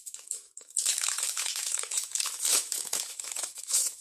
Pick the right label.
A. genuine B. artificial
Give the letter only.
B